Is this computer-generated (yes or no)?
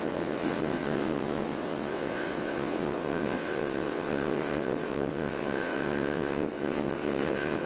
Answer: yes